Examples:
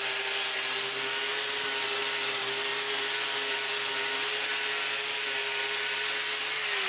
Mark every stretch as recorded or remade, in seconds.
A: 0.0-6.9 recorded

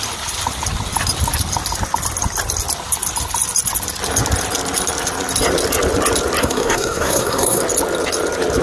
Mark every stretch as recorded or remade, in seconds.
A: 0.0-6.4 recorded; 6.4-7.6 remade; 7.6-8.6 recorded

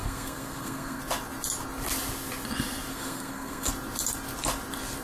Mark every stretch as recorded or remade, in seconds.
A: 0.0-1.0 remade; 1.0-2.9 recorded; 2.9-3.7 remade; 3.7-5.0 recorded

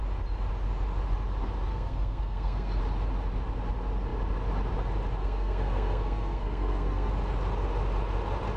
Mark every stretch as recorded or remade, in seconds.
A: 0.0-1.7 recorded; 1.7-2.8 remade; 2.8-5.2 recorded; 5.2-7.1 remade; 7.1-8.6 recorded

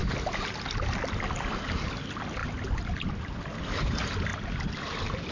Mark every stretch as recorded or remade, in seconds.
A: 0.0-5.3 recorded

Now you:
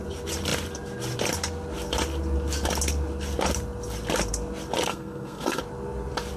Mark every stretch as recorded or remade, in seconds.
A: 0.0-4.9 recorded; 4.9-5.6 remade; 5.6-6.4 recorded